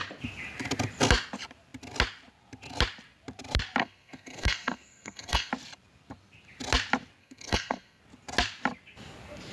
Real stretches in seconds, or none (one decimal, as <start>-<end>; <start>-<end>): 0.0-3.8; 5.5-7.2; 8.0-9.5